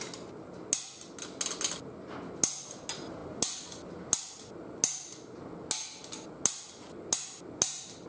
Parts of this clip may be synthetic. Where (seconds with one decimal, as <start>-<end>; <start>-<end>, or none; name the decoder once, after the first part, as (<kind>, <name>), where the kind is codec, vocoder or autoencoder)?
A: none